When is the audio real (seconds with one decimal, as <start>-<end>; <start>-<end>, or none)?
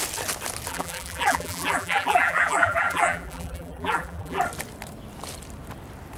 0.0-0.7; 4.4-6.2